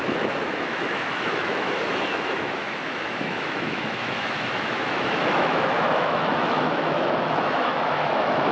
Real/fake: fake